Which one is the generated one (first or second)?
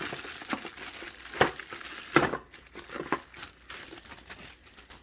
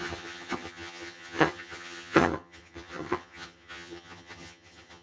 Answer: second